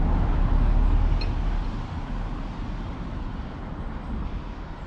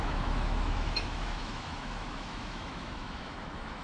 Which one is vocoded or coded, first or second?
second